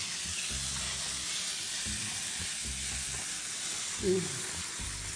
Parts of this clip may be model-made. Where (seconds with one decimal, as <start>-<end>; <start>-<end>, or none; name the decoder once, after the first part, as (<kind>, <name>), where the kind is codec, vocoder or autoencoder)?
none